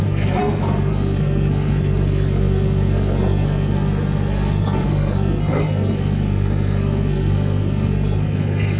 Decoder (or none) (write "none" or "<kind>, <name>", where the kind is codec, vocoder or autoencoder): codec, SNAC